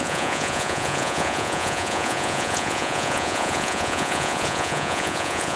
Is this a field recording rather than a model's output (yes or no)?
no